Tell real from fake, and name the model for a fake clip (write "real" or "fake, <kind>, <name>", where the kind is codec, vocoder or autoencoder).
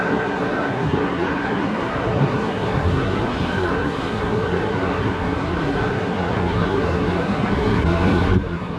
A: fake, codec, SNAC